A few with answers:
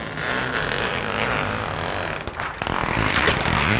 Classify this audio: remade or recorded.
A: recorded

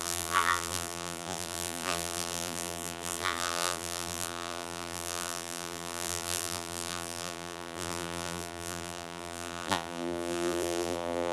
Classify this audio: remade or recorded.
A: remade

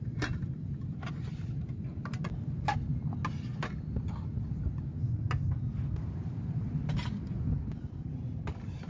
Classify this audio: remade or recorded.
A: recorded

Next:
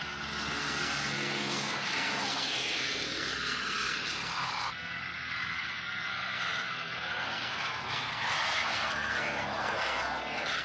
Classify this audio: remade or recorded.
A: remade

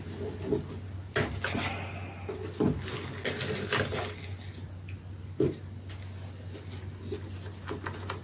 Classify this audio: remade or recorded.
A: recorded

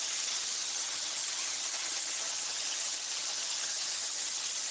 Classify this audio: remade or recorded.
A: remade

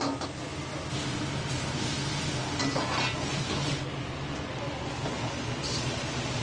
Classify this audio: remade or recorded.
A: recorded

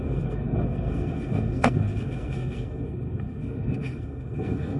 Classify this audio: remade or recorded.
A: remade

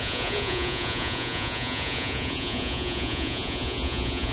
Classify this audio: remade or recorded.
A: remade